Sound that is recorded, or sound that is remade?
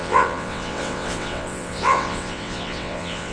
remade